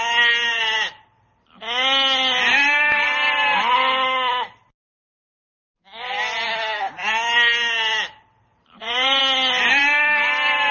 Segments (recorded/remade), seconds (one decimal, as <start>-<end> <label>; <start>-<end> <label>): 0.0-0.5 recorded; 0.5-1.1 remade; 1.1-2.5 recorded; 2.5-3.6 remade; 3.6-8.5 recorded; 8.5-9.2 remade; 9.2-10.7 recorded